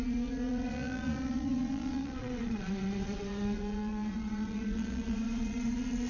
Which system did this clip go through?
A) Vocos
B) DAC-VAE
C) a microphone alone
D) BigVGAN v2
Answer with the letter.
A